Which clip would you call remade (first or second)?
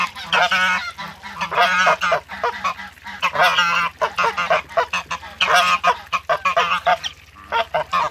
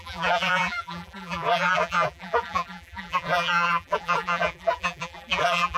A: second